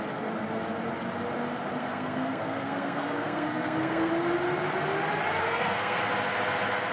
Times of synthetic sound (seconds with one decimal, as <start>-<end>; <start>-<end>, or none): 1.8-4.1; 5.4-6.0